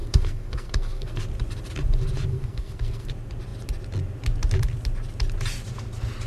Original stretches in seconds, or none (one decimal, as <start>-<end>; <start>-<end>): 1.2-2.3; 3.1-6.3